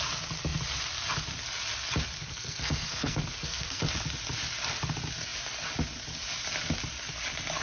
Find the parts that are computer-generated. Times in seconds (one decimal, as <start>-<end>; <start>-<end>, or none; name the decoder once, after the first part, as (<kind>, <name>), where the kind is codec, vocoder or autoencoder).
2.2-3.8 (codec, SNAC)